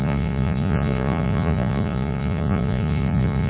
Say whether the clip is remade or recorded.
remade